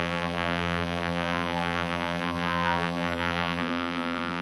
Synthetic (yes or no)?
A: yes